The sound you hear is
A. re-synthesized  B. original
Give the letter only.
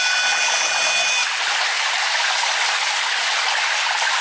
B